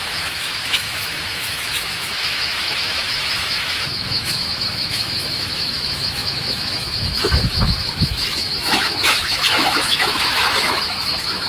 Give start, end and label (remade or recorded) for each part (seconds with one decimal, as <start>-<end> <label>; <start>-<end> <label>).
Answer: 0.0-11.5 remade